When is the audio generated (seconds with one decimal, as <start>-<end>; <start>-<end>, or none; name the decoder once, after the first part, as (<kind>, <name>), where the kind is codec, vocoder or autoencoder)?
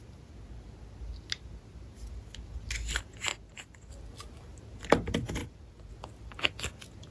none